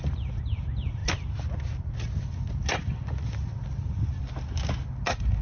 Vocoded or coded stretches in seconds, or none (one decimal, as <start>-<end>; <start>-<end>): none